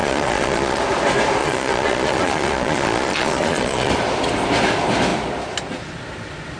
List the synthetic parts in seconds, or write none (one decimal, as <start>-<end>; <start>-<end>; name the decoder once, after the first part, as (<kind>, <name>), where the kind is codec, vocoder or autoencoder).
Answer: 0.0-0.8 (vocoder, Vocos); 1.4-3.9